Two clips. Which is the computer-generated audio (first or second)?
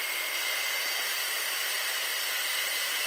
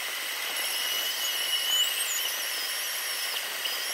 first